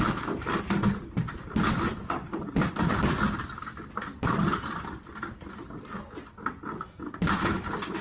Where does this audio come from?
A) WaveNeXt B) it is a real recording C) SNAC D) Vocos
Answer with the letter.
B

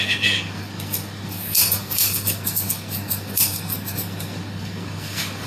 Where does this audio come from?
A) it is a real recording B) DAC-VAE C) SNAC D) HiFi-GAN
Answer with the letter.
C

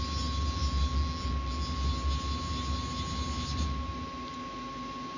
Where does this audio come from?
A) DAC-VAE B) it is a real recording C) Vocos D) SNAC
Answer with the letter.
B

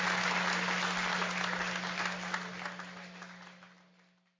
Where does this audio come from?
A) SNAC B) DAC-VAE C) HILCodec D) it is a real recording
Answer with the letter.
D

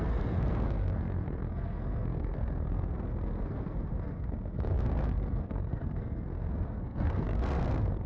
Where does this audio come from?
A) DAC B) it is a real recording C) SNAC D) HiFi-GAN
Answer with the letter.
C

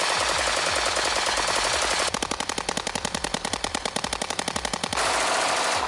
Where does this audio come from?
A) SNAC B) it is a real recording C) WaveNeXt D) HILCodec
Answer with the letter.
B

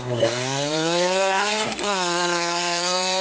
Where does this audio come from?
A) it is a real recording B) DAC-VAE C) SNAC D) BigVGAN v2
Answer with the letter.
C